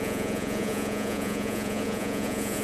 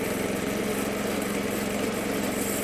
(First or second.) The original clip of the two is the second